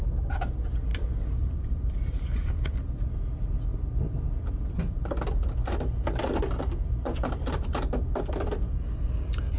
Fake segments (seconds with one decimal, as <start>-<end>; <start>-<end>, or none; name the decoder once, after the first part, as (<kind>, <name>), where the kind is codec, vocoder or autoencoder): 0.9-2.2 (vocoder, BigVGAN v2)